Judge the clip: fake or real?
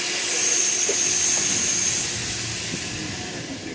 real